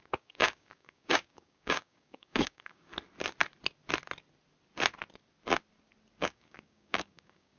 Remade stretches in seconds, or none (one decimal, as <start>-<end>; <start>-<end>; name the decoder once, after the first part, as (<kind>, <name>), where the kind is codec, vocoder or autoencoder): 0.0-2.9 (codec, DAC); 6.2-7.6